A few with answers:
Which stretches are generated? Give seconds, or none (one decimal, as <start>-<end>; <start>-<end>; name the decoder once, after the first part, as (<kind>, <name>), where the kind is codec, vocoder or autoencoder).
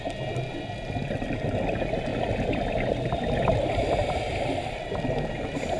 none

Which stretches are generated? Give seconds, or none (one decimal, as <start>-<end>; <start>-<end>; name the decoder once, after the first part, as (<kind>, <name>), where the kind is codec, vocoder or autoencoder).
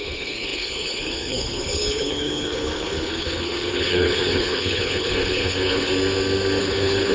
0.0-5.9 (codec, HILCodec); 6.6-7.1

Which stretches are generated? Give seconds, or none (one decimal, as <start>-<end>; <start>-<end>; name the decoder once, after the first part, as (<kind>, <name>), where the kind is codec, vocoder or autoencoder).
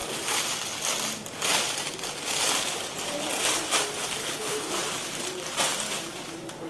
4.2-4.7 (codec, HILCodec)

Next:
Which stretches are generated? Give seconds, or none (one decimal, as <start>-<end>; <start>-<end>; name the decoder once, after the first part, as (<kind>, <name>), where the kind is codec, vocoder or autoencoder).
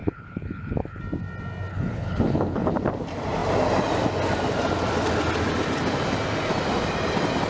0.0-1.0 (codec, HILCodec); 1.7-2.8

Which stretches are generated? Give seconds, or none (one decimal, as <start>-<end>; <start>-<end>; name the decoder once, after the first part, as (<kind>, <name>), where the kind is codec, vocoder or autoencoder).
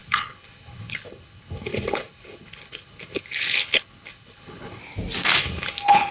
0.0-4.8 (codec, HILCodec); 5.4-6.1